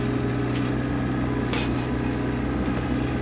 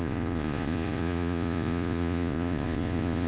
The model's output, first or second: second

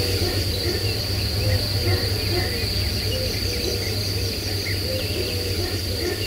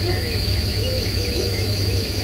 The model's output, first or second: second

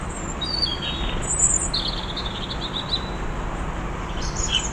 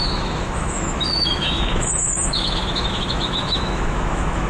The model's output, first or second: second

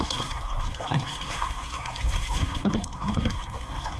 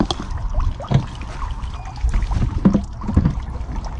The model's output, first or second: first